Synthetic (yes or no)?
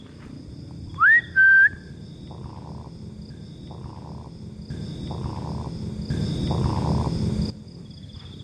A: no